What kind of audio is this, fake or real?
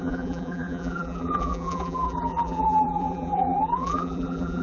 fake